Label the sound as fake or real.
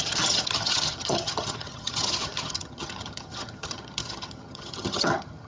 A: fake